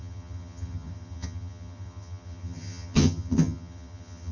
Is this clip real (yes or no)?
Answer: no